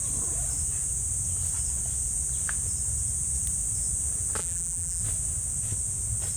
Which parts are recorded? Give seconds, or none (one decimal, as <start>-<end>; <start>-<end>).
0.0-4.4; 5.0-6.4

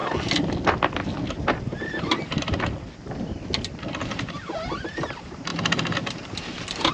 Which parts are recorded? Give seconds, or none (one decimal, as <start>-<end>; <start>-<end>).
0.0-3.7

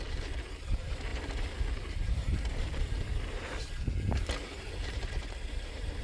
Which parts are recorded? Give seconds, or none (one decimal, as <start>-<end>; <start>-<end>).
0.0-1.1; 3.9-6.0

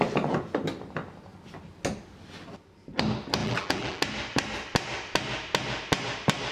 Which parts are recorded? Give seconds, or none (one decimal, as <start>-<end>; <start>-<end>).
0.0-3.4; 4.0-6.5

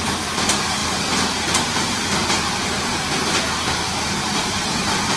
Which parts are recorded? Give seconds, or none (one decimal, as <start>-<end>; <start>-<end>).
0.8-1.3